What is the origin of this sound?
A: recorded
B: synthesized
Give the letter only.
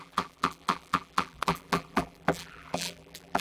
B